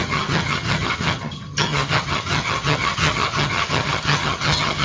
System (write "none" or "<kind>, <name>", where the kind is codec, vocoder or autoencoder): vocoder, HiFi-GAN